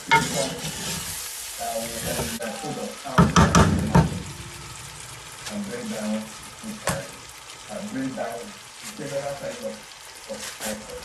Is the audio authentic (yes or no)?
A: yes